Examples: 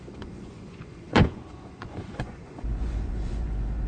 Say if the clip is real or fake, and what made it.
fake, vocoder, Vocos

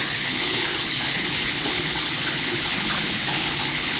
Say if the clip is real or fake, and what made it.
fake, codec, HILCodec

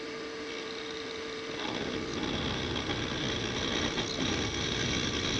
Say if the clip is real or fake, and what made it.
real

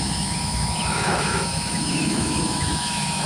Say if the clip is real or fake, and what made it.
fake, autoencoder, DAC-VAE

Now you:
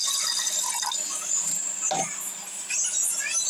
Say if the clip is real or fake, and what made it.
real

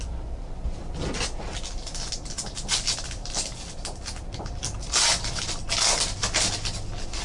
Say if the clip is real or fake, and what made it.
real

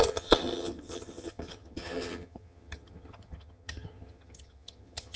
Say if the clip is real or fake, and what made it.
fake, vocoder, HiFi-GAN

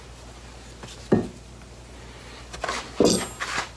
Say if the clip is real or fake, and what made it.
real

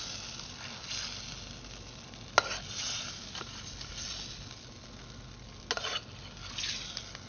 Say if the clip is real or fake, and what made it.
real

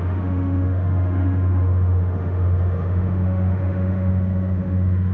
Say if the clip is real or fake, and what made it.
fake, autoencoder, DAC-VAE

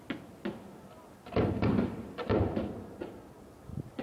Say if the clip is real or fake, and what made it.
real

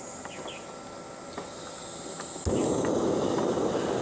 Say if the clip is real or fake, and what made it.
real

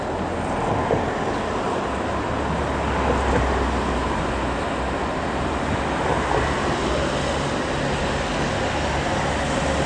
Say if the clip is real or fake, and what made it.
real